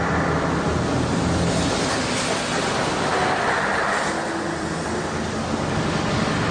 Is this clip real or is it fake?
real